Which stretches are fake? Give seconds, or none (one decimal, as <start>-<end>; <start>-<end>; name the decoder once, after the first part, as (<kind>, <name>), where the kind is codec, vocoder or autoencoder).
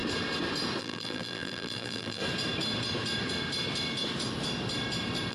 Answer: 0.8-2.2 (vocoder, BigVGAN v2)